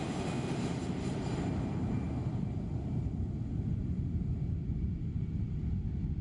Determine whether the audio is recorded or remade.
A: recorded